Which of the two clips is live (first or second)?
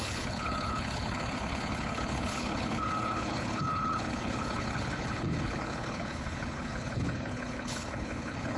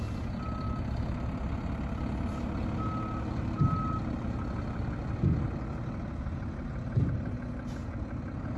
second